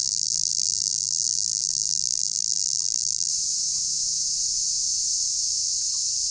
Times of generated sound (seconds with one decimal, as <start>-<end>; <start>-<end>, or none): 0.0-3.3